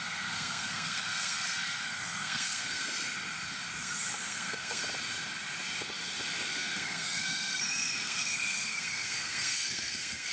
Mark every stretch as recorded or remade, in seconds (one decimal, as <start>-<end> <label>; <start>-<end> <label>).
0.0-2.8 remade; 2.8-3.8 recorded; 3.8-4.8 remade; 4.8-6.5 recorded; 6.5-10.3 remade